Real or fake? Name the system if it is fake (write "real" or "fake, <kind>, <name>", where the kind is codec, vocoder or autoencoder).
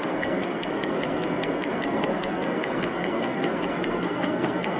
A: fake, codec, SNAC